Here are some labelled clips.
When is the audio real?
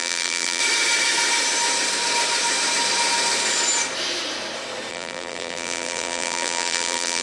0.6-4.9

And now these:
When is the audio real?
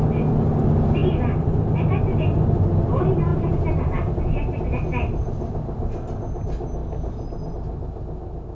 0.0-8.5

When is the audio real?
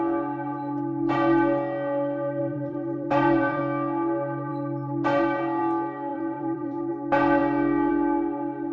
0.0-2.4; 3.6-6.1; 6.9-8.7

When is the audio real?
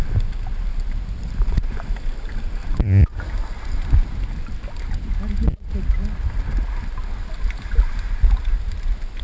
0.0-0.7; 1.9-9.2